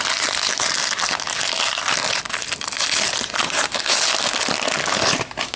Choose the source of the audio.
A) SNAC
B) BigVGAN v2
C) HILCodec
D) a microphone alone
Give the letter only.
D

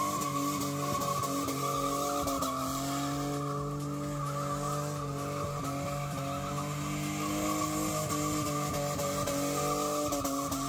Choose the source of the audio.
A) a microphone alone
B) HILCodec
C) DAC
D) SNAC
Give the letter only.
A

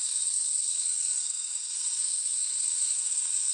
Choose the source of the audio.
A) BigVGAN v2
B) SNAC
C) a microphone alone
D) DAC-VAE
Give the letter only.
B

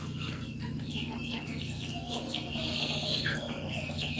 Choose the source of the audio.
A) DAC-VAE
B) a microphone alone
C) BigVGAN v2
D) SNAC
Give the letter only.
D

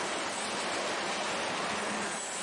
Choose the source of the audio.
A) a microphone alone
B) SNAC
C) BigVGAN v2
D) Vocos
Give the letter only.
A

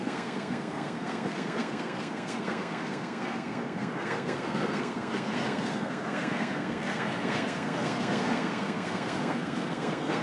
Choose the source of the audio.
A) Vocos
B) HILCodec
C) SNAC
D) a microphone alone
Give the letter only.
C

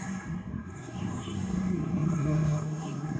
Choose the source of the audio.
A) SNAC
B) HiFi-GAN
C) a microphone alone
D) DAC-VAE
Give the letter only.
A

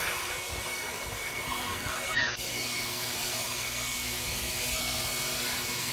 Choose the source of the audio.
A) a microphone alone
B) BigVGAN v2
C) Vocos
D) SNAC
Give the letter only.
D